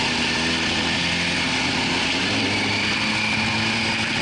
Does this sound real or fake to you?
real